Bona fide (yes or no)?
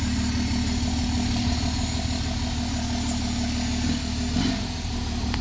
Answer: yes